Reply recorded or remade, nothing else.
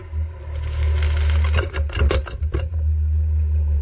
recorded